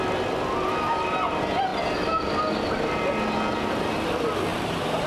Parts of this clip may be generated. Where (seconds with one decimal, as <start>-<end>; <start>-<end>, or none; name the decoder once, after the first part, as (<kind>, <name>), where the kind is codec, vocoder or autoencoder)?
4.5-5.1 (vocoder, BigVGAN v2)